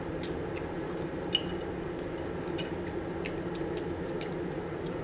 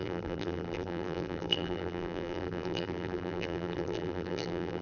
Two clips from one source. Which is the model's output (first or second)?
second